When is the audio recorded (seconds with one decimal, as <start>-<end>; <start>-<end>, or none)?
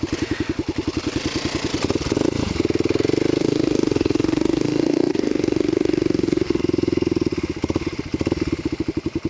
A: 0.0-3.4; 6.6-9.3